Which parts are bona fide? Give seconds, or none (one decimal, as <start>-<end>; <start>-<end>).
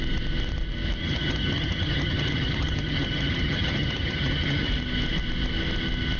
0.0-1.0; 4.7-6.2